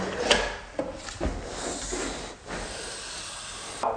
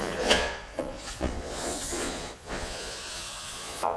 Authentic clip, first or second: first